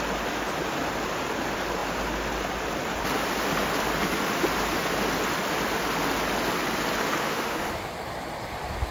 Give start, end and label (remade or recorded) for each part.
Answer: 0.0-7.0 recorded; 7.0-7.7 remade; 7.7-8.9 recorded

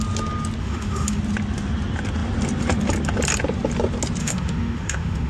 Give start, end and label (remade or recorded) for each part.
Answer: 0.0-0.6 recorded; 0.6-1.2 remade; 1.2-4.2 recorded; 4.2-5.3 remade

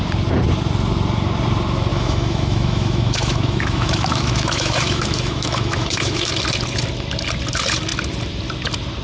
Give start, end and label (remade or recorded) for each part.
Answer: 0.0-1.9 recorded; 1.9-6.3 remade; 6.3-9.0 recorded

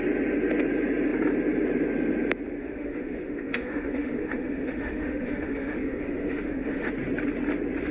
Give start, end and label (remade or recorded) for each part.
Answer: 0.0-2.6 recorded; 2.6-6.9 remade; 6.9-7.9 recorded

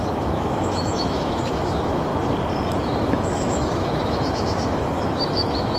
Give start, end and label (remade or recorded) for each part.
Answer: 0.0-2.1 remade; 2.1-2.7 recorded; 2.7-5.8 remade

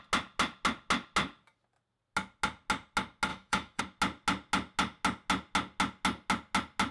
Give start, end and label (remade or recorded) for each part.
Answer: 0.0-3.3 recorded; 3.3-3.8 remade; 3.8-6.9 recorded

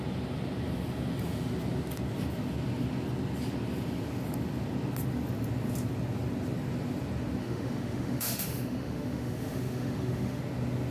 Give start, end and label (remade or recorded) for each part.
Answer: 0.0-7.4 recorded; 7.4-10.4 remade; 10.4-10.9 recorded

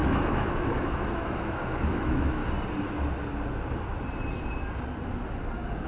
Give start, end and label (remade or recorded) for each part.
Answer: 0.0-2.4 remade; 2.4-5.9 recorded